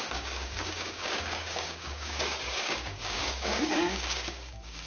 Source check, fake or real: fake